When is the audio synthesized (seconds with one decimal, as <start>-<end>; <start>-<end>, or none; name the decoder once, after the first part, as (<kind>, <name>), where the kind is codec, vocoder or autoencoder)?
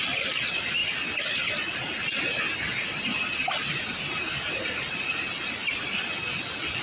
none